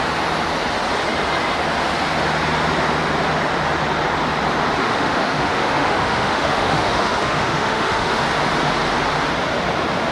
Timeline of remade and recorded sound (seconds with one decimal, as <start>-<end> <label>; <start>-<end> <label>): 0.0-4.8 recorded; 4.8-8.2 remade; 8.2-10.1 recorded